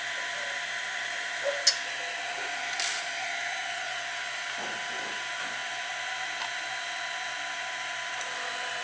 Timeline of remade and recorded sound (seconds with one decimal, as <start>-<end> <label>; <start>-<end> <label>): 0.0-8.8 recorded